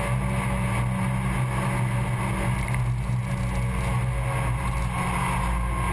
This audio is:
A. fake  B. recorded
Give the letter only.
B